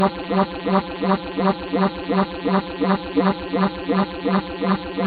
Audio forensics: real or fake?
fake